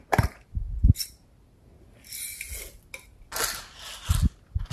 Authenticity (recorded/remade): recorded